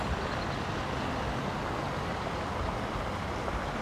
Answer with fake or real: real